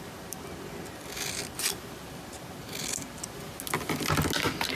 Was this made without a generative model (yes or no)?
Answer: yes